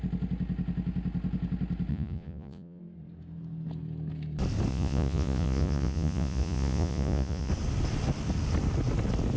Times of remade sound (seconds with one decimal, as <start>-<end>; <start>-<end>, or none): 1.9-2.8; 4.7-7.5